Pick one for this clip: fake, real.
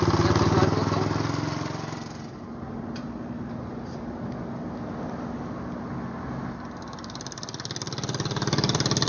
real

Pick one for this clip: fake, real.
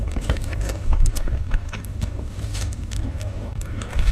fake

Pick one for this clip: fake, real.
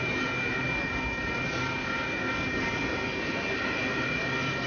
real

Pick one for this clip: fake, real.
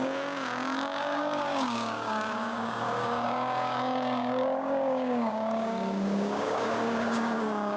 fake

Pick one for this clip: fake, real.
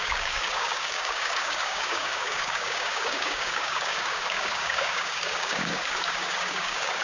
fake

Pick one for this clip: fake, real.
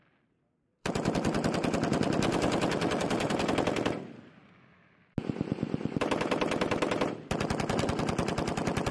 real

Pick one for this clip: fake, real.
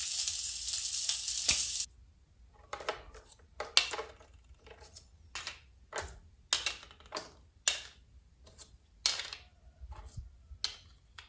real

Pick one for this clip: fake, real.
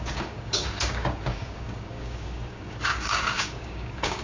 fake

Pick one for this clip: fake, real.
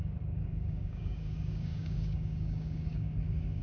fake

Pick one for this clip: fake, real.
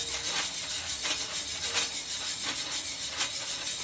real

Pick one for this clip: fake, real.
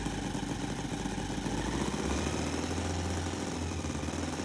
real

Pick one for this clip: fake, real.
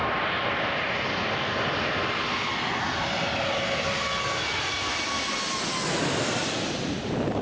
real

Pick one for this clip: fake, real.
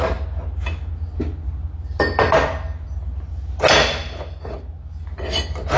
real